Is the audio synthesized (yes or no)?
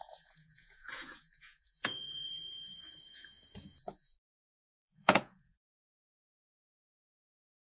yes